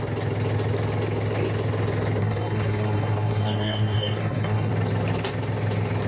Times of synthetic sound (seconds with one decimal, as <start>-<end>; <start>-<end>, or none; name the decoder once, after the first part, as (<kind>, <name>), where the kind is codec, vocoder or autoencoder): 2.2-4.7 (codec, SNAC)